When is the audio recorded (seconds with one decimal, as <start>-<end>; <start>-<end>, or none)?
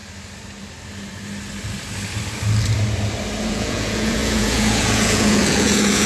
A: 0.0-3.4